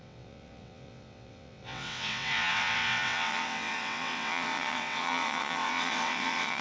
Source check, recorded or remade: remade